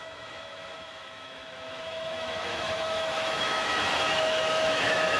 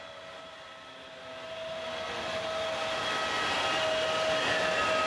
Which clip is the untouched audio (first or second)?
second